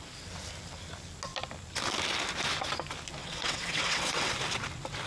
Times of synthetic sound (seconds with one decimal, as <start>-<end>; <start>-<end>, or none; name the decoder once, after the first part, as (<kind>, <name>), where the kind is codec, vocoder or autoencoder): 3.2-4.3 (vocoder, WaveNeXt)